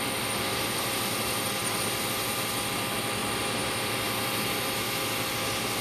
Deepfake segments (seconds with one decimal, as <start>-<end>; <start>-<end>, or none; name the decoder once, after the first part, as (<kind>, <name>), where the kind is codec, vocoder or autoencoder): 0.5-1.8 (vocoder, BigVGAN v2)

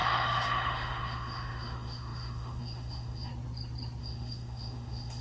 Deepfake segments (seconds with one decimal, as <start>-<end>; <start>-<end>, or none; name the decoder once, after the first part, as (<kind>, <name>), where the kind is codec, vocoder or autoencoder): 0.0-3.3 (autoencoder, DAC-VAE); 4.0-5.2

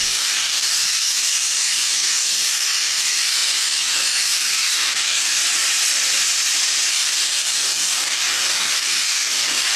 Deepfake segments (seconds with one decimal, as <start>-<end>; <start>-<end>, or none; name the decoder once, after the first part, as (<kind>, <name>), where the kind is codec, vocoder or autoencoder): 0.0-5.4 (codec, DAC); 6.9-9.8

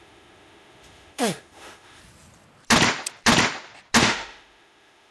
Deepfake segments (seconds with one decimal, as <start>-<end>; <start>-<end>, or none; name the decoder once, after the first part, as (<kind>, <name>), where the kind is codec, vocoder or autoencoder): 0.0-2.0 (autoencoder, DAC-VAE); 4.0-5.1

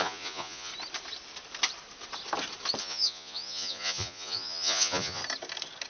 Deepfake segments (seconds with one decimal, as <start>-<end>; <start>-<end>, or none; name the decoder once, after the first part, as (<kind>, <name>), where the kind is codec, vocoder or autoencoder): 0.0-0.7 (vocoder, Vocos); 2.8-5.2

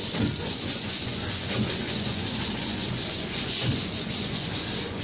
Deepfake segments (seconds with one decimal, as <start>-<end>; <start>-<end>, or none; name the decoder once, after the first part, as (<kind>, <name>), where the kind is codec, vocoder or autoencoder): 0.0-5.0 (vocoder, Vocos)

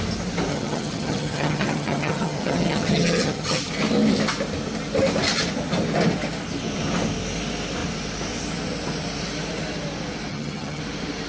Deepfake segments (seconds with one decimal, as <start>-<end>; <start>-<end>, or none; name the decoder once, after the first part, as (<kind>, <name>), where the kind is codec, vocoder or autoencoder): 0.5-3.6 (vocoder, HiFi-GAN); 10.3-10.8

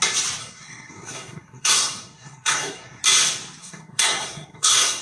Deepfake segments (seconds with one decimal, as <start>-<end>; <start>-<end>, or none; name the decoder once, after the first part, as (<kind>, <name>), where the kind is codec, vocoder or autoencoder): 0.4-3.0 (codec, SNAC); 3.6-5.0